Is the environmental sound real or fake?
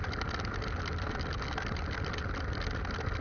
real